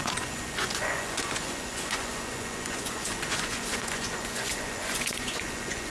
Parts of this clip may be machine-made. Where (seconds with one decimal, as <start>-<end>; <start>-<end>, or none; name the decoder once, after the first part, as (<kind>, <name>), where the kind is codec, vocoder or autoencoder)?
0.0-5.9 (vocoder, Vocos)